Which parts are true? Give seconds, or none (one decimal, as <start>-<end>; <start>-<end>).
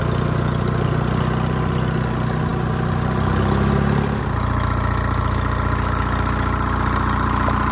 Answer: 0.0-7.7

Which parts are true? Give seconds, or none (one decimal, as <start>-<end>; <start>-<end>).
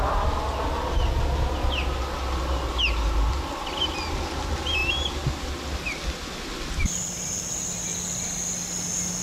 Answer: 0.0-9.2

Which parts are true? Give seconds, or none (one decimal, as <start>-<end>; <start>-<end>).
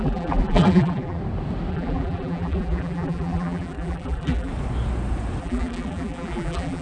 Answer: 1.2-1.7; 4.5-5.4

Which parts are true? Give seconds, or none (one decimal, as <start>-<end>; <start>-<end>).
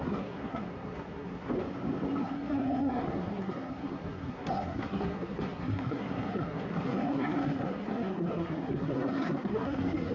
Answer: 1.5-2.2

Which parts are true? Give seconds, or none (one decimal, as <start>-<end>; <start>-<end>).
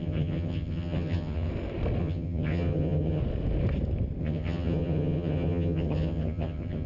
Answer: 1.5-2.0; 3.2-4.2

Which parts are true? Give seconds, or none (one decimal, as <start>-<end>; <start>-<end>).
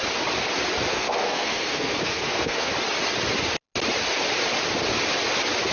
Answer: 0.0-0.9; 2.7-5.7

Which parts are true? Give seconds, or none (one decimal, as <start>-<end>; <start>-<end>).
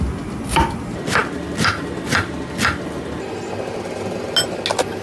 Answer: 0.0-5.0